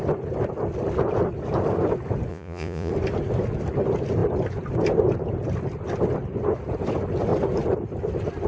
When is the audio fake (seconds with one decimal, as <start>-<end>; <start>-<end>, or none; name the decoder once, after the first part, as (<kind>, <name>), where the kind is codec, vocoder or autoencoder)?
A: 2.3-2.9 (vocoder, Vocos)